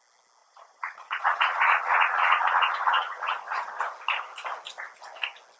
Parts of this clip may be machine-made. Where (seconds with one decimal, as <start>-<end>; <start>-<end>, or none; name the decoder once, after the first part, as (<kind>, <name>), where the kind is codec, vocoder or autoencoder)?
0.4-3.8 (vocoder, Vocos)